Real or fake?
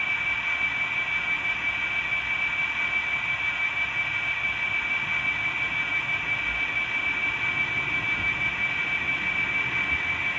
real